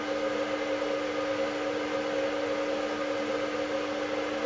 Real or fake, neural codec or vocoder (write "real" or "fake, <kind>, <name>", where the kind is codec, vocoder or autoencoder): real